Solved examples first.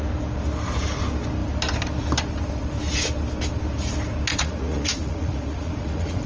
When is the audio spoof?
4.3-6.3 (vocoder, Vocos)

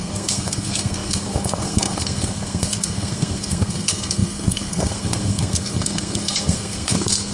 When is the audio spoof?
0.0-7.3 (codec, SNAC)

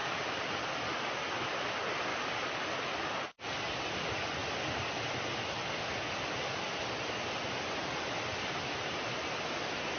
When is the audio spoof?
none

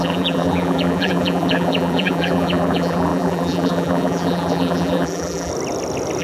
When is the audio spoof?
0.0-5.5 (vocoder, BigVGAN v2)